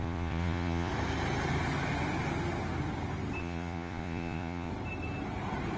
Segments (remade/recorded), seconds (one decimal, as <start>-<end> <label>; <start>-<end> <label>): 0.0-0.9 remade; 0.9-3.4 recorded; 3.4-4.7 remade; 4.7-5.8 recorded